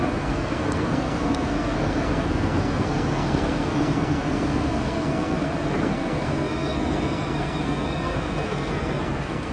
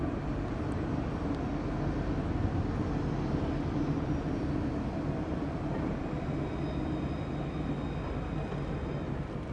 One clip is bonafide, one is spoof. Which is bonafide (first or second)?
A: second